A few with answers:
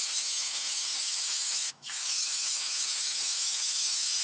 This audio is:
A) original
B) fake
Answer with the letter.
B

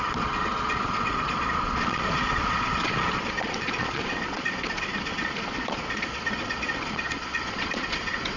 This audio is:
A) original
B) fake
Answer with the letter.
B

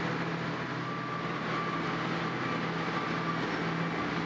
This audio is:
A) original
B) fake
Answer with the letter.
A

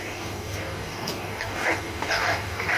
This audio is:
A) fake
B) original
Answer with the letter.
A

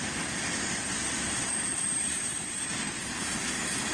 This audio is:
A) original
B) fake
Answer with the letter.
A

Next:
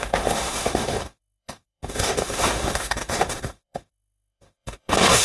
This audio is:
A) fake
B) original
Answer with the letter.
A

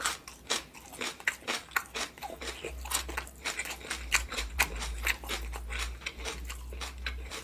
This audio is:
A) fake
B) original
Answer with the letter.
B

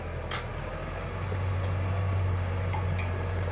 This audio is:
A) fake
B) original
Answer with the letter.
B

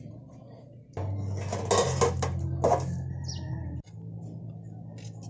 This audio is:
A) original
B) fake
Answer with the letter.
A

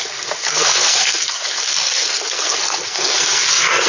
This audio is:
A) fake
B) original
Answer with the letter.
A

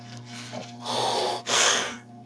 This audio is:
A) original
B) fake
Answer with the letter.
B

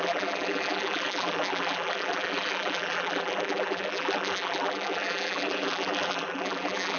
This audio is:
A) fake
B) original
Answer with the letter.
A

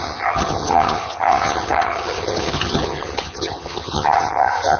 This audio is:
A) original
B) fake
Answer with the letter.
B